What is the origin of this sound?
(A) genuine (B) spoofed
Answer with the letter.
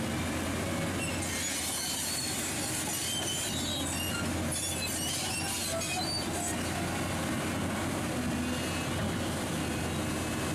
A